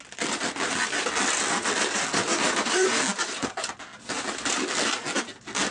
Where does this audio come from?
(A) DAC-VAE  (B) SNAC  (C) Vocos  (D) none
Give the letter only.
D